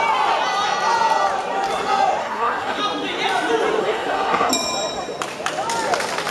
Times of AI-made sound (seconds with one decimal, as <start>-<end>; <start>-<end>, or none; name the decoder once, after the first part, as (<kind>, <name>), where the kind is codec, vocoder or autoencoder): 2.2-2.8 (codec, SNAC); 3.8-4.5